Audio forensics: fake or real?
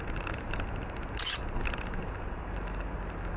real